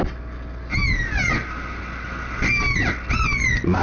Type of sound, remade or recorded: recorded